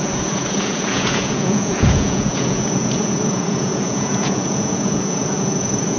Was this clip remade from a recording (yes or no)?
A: yes